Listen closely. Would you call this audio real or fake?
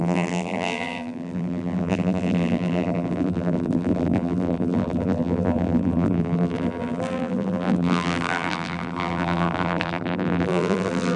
fake